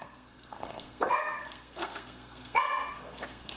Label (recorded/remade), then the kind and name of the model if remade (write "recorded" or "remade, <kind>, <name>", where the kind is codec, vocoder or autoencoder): remade, codec, SNAC